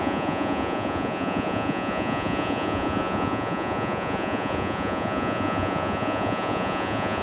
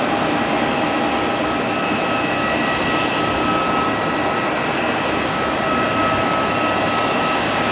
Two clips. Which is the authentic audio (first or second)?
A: second